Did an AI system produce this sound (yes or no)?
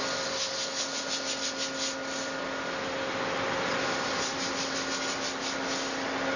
no